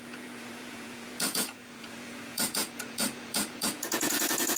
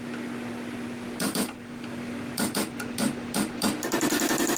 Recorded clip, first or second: second